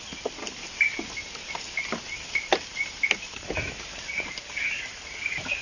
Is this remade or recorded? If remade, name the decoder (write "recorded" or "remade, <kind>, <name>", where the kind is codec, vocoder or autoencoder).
recorded